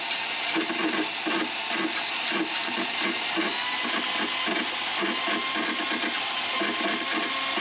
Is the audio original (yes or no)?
yes